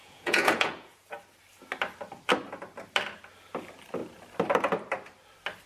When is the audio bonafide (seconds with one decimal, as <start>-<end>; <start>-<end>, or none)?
1.1-5.7